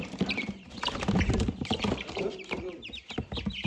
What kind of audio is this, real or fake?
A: fake